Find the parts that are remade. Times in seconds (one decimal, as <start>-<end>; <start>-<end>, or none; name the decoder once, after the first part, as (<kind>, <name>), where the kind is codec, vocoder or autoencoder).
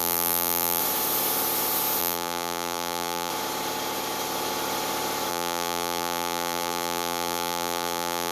0.0-0.8 (vocoder, BigVGAN v2); 2.0-3.3; 5.3-8.3